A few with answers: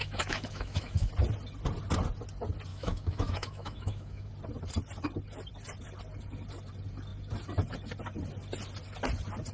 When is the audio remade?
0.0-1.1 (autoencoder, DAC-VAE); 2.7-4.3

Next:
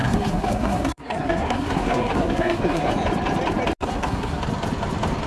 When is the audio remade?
0.0-2.9 (codec, SNAC); 3.8-4.4

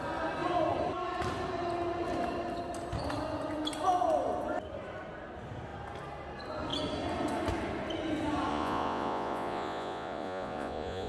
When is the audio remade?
8.5-11.1 (vocoder, Vocos)

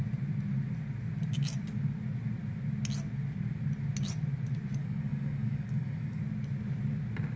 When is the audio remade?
4.8-6.2 (codec, DAC)

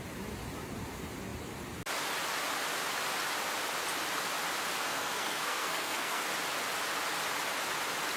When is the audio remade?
4.7-6.3 (codec, SNAC)

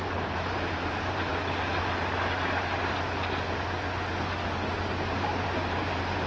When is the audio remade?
0.0-1.3 (vocoder, BigVGAN v2); 5.1-6.3

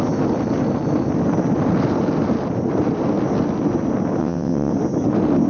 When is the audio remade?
4.2-4.7 (vocoder, WaveNeXt)

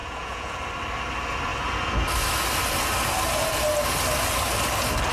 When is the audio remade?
0.0-0.6 (vocoder, Vocos)